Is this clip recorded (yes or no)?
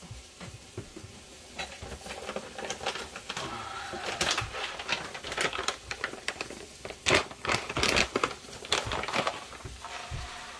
yes